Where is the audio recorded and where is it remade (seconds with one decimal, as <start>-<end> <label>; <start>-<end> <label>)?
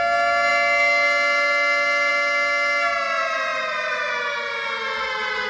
0.0-3.5 recorded; 3.5-4.1 remade; 4.1-5.5 recorded